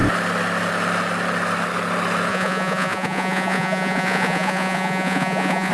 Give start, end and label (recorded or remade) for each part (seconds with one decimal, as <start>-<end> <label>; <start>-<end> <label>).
0.0-2.3 recorded; 2.3-5.7 remade